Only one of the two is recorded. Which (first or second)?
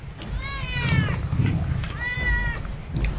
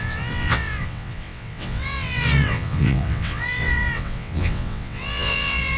first